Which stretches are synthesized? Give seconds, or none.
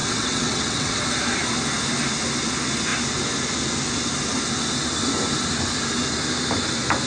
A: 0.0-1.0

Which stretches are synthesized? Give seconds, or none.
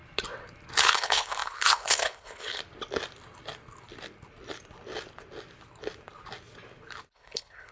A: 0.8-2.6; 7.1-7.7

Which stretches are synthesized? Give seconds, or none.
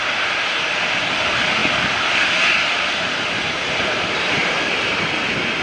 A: 1.6-5.0